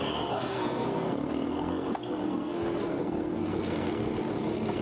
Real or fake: fake